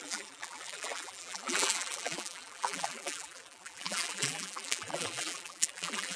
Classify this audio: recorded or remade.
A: remade